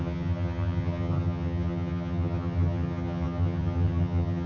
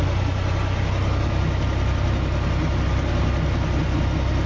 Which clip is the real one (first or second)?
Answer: second